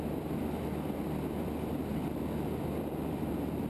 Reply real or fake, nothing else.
fake